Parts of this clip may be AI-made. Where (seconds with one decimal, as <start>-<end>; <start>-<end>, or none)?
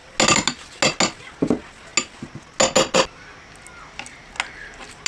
none